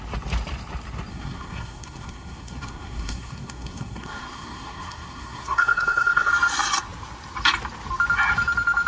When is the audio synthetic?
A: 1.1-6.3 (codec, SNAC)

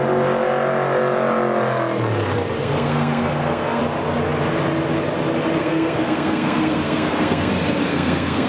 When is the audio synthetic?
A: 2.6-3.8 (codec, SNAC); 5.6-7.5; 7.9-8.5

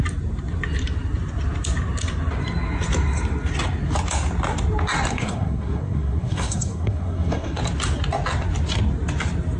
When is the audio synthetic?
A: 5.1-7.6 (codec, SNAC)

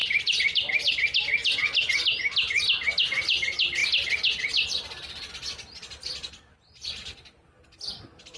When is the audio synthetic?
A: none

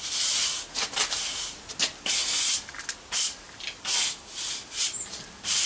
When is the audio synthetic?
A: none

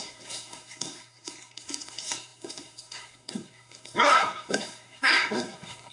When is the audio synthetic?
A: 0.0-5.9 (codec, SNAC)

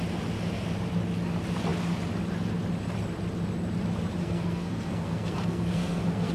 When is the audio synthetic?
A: 4.2-6.3 (codec, SNAC)

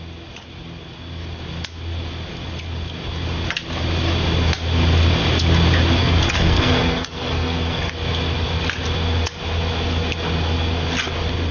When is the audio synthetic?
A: 6.0-7.9 (codec, SNAC)